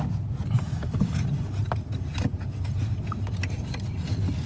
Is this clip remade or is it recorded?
recorded